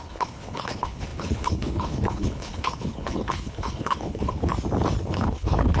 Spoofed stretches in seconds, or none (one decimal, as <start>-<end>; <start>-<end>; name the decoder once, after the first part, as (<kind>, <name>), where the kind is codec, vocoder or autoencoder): 0.0-4.5 (codec, HILCodec); 5.0-5.8